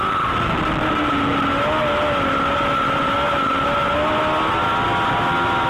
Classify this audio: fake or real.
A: real